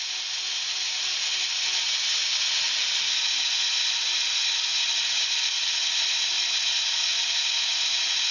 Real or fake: real